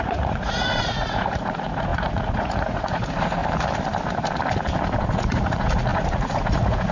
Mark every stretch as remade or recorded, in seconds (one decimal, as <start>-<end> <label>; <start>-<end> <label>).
0.0-3.4 remade; 3.4-5.0 recorded; 5.0-6.9 remade